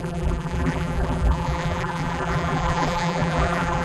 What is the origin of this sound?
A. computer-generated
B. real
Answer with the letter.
A